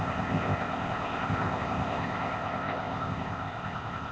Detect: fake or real fake